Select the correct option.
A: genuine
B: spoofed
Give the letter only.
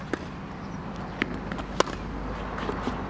A